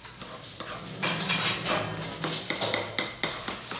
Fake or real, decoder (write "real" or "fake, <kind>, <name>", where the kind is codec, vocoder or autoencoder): real